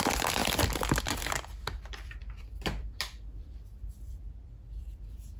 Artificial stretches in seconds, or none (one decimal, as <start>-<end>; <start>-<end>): 0.0-5.4